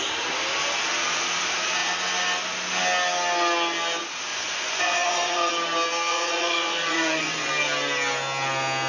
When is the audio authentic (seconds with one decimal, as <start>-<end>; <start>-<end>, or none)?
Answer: 0.0-4.3; 5.5-6.1; 7.5-8.9